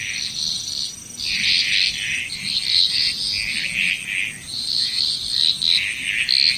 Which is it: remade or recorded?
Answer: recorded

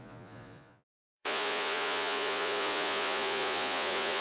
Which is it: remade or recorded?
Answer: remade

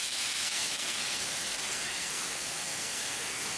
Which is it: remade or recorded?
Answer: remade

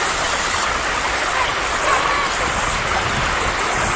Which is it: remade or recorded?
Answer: recorded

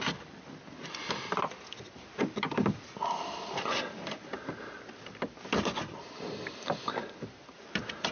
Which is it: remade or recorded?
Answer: recorded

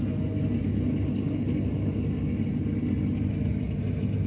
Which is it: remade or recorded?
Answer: recorded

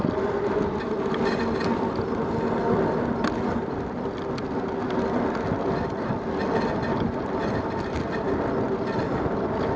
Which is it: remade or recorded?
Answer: recorded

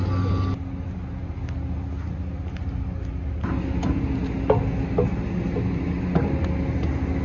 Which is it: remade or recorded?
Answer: recorded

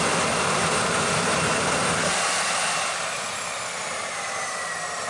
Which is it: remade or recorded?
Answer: remade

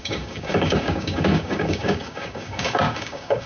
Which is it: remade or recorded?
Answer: remade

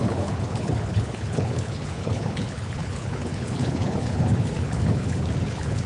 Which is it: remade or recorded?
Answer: remade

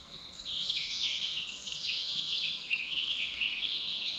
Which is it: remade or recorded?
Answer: remade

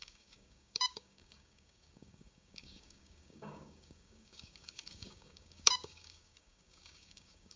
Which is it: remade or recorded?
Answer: remade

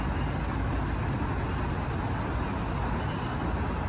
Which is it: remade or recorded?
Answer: recorded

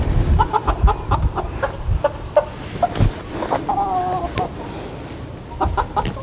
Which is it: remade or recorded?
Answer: recorded